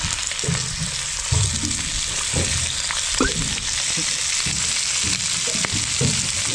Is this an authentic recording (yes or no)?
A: yes